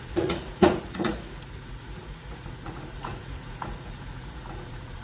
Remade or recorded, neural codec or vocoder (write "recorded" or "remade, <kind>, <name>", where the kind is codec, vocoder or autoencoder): remade, vocoder, Vocos